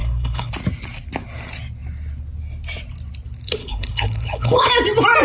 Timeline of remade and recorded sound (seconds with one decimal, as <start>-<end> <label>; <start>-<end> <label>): 0.0-0.5 remade; 0.5-3.6 recorded; 3.6-4.7 remade; 4.7-5.2 recorded